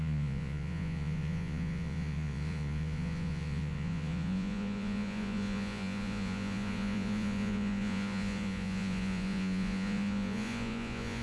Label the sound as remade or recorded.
remade